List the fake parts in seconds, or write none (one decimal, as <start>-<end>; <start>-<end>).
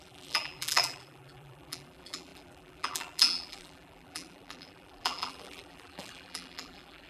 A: 0.0-7.1